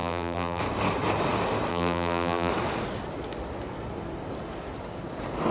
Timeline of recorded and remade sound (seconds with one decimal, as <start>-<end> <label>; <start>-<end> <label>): 0.0-0.6 remade; 0.6-1.7 recorded; 1.7-2.5 remade; 2.5-5.5 recorded